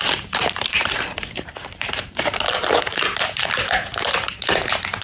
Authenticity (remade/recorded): remade